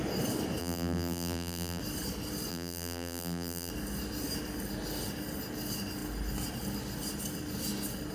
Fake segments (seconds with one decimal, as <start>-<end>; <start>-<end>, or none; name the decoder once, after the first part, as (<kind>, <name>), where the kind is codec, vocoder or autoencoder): 0.6-1.8 (vocoder, BigVGAN v2); 2.5-3.7